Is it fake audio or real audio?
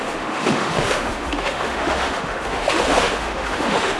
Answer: fake